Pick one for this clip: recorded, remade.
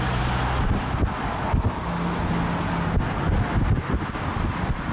recorded